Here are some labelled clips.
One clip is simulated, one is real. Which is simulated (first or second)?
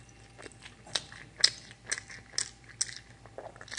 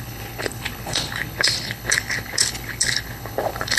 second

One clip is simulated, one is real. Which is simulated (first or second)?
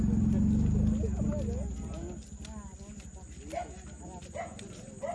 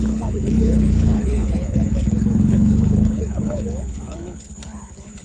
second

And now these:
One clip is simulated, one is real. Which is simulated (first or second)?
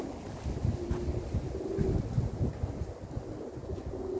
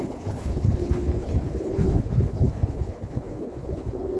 second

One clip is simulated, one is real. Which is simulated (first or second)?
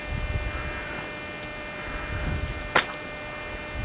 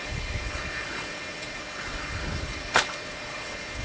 second